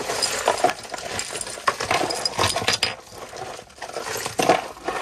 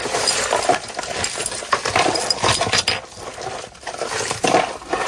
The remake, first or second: second